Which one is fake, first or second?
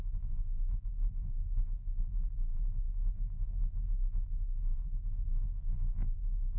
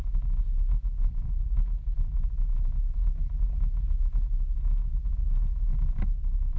first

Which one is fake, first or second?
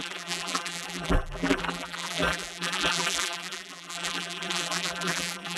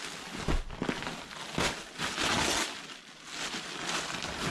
first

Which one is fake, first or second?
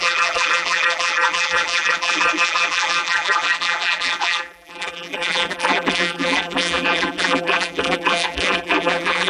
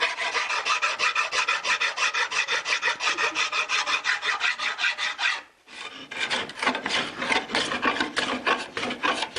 first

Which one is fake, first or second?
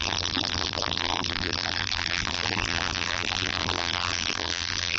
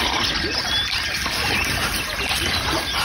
first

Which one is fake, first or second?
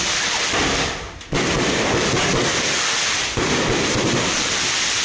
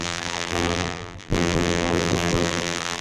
second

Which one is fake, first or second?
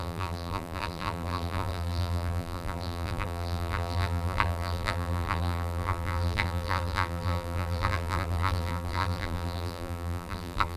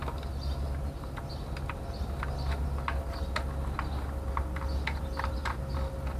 first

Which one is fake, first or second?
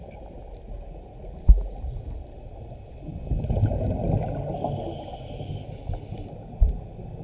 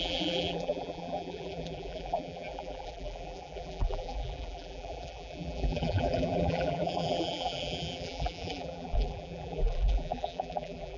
second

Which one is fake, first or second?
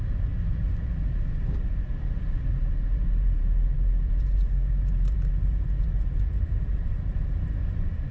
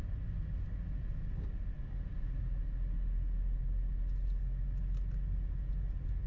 first